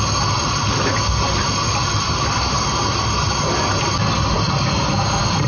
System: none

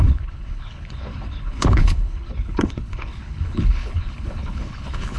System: codec, HILCodec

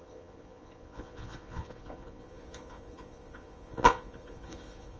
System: vocoder, Vocos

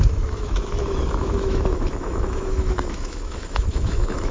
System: autoencoder, DAC-VAE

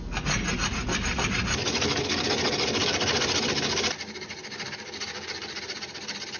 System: none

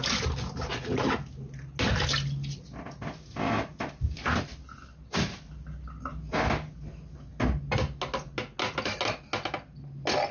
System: none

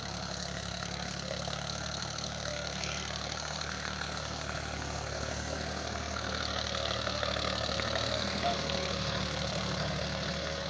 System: codec, SNAC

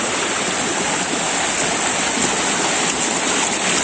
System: none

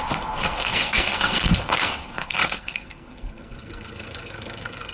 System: codec, SNAC